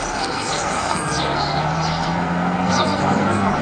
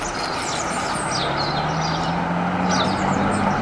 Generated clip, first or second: first